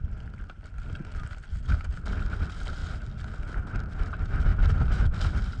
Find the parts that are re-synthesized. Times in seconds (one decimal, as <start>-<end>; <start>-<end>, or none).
none

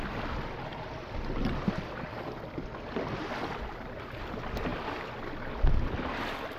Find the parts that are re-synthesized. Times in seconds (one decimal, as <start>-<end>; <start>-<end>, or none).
0.0-4.7

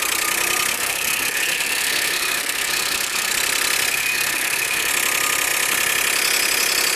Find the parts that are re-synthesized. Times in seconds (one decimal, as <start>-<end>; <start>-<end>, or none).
0.7-3.3; 3.9-4.9